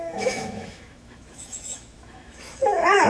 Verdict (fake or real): fake